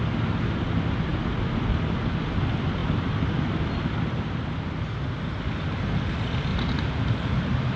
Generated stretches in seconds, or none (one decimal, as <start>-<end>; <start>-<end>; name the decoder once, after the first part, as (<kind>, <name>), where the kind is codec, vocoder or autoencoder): 6.5-7.8 (vocoder, BigVGAN v2)